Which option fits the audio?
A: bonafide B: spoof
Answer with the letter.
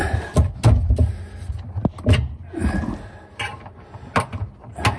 A